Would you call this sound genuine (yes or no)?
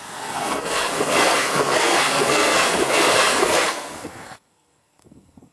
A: no